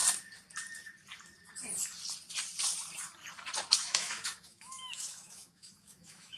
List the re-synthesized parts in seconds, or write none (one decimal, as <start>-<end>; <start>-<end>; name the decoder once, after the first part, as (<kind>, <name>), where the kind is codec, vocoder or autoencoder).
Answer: 3.7-6.4 (autoencoder, DAC-VAE)